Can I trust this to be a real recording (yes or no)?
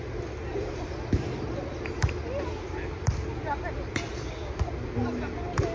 yes